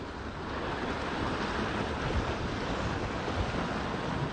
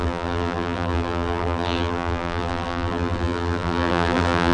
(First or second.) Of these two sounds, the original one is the first